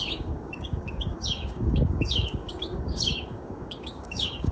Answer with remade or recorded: remade